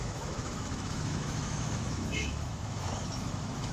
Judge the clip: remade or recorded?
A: remade